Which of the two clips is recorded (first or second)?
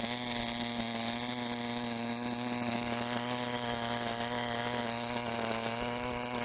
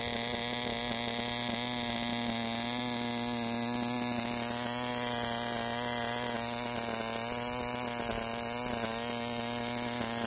second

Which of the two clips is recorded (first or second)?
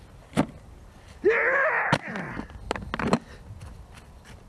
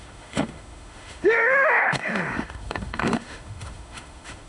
first